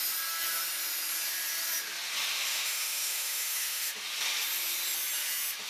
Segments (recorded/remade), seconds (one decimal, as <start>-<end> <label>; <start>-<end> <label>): 0.0-2.5 recorded; 2.5-3.9 remade; 3.9-5.7 recorded